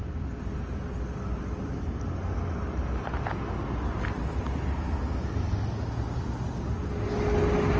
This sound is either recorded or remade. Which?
recorded